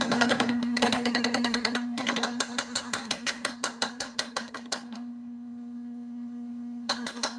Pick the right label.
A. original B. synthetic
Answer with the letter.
B